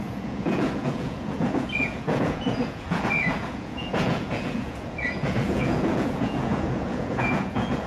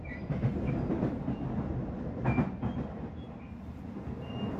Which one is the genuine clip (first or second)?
second